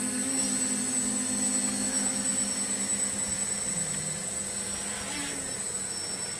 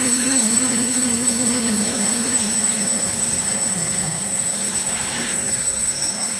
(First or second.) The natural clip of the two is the first